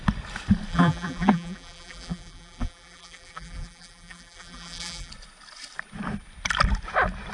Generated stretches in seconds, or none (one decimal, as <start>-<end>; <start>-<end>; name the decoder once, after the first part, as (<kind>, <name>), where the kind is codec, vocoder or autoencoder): 0.7-5.1 (vocoder, BigVGAN v2)